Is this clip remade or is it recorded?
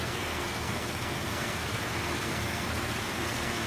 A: remade